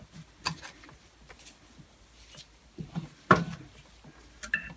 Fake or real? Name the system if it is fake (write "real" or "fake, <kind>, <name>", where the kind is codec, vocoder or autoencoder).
real